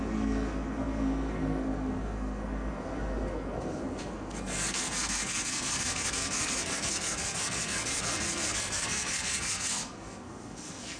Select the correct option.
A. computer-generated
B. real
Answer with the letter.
A